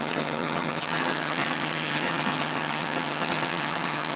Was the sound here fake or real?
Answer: fake